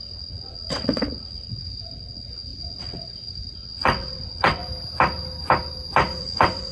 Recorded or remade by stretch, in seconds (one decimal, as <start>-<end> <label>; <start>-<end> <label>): 0.0-4.6 remade; 4.6-6.2 recorded; 6.2-6.7 remade